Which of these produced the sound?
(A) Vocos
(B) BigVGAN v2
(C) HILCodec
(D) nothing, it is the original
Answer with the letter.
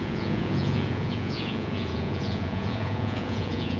A